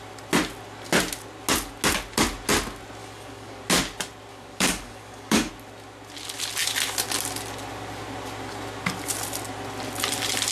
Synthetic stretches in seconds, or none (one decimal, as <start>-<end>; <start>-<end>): 3.0-3.6; 4.3-5.5